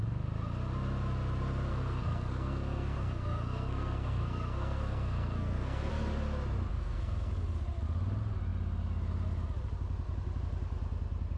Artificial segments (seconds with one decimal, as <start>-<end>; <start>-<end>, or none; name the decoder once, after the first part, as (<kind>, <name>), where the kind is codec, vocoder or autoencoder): 1.7-5.9 (codec, SNAC); 6.7-7.3